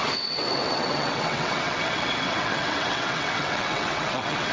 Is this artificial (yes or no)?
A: yes